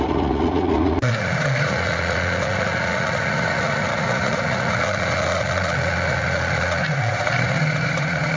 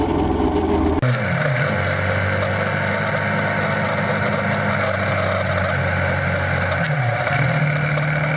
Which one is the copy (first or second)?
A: first